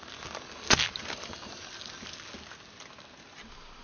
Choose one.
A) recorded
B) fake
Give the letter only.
A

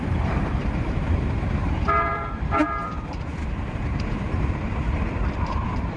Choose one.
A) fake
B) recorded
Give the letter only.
A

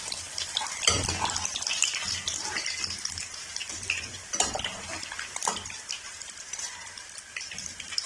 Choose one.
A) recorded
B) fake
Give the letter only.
A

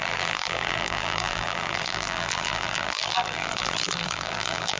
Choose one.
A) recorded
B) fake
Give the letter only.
B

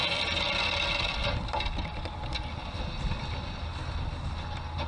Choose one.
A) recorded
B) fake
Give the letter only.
A